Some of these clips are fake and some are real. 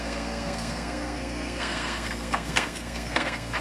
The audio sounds fake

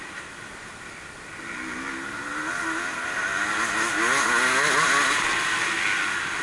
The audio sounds real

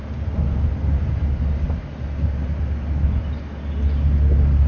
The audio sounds real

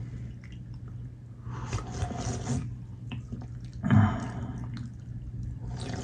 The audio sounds real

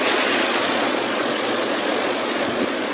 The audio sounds fake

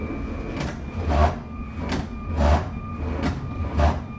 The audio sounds real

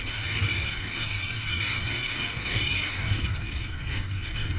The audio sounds fake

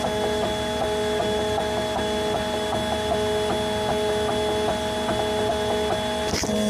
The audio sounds real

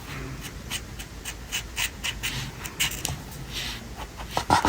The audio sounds real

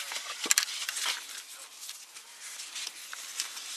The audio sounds real